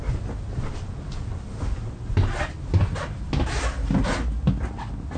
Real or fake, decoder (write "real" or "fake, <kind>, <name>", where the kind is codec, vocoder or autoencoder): real